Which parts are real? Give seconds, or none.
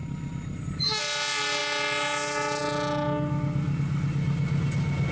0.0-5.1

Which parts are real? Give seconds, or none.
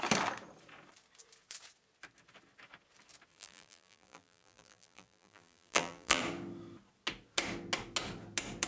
0.0-3.3; 6.2-8.7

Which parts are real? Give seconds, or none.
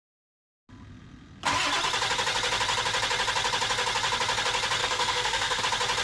0.0-4.8; 5.6-6.0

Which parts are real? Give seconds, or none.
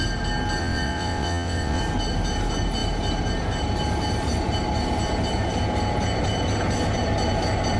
0.0-0.6; 1.8-7.8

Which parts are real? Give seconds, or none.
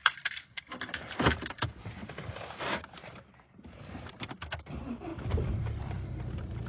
2.0-2.5; 5.1-5.8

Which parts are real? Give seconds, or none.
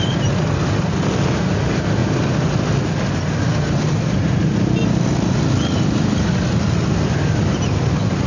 0.0-8.3